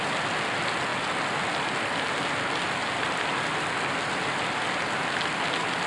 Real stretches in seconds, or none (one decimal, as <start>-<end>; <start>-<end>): 0.0-5.9